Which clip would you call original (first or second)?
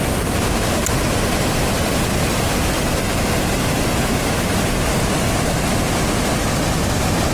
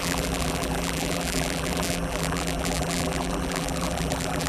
first